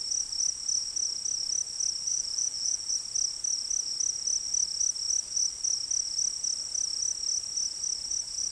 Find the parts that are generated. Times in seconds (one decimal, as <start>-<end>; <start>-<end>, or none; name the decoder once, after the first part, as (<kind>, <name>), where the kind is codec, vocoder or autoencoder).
2.1-2.9 (vocoder, Vocos)

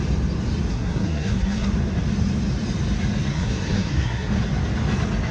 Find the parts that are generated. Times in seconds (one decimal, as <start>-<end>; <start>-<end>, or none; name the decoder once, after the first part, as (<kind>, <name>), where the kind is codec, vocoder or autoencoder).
0.7-1.7 (codec, SNAC); 3.3-4.4

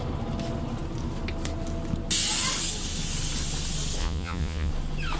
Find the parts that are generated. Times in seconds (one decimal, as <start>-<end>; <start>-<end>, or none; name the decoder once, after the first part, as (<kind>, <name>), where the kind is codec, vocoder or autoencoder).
4.0-4.7 (vocoder, Vocos)